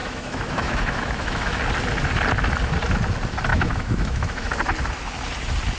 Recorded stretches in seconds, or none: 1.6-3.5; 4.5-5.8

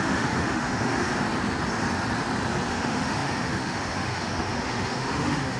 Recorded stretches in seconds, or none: 1.1-2.7

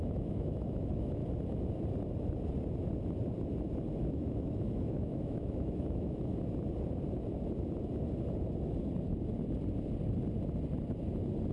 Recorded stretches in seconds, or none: 1.2-4.1; 6.3-11.5

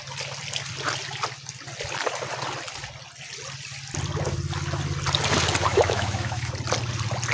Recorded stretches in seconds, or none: 0.0-5.7; 6.5-7.3

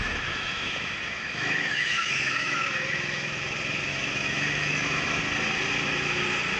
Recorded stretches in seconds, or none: 3.4-3.9; 5.2-6.6